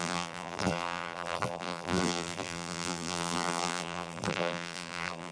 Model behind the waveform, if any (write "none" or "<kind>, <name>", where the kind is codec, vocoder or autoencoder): vocoder, BigVGAN v2